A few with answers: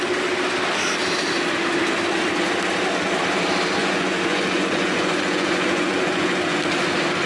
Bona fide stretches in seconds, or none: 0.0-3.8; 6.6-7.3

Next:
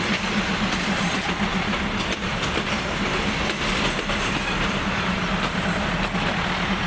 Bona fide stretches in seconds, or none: 0.0-6.9

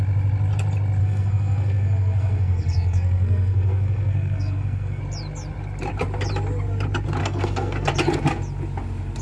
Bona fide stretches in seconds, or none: 0.0-1.0; 5.0-7.2; 7.9-9.2

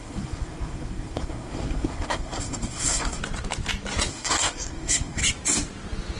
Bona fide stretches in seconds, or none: 3.2-4.1; 5.2-6.2

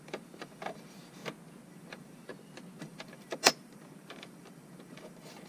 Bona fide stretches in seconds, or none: 1.2-1.7; 2.3-2.8

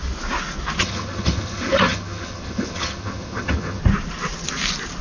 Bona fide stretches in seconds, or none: 0.0-0.8; 3.8-5.0

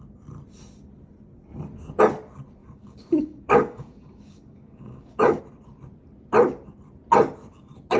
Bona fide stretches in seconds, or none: 0.0-2.6; 5.4-8.0

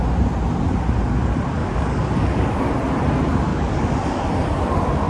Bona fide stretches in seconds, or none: 0.0-1.6; 2.6-3.5; 4.1-5.1